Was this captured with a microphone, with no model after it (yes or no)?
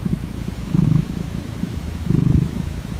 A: no